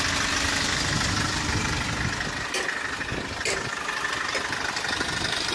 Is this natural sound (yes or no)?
yes